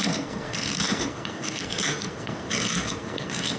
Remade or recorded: remade